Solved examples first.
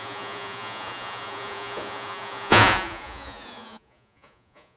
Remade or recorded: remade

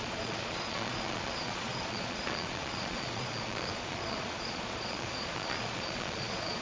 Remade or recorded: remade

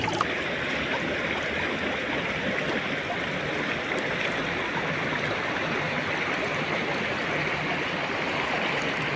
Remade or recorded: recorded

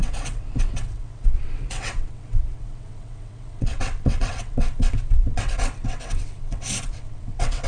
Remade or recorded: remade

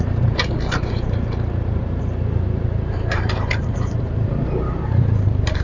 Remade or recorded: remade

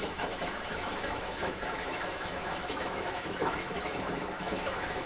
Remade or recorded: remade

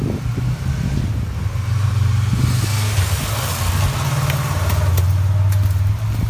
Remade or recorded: recorded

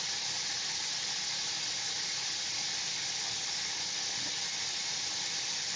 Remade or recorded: recorded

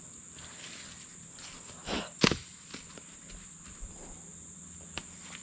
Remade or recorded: recorded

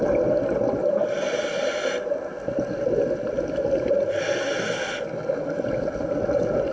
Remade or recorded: recorded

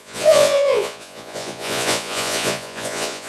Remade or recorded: remade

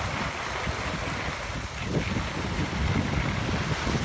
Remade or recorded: recorded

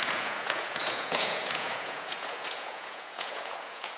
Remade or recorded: remade